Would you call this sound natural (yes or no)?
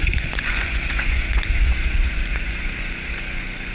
no